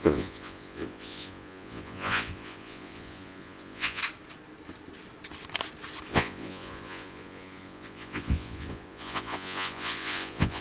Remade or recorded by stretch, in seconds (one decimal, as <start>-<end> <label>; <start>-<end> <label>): 0.0-4.0 remade; 4.0-6.1 recorded; 6.1-10.6 remade